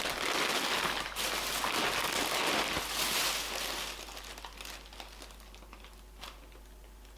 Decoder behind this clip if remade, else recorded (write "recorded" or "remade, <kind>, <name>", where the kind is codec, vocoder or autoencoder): recorded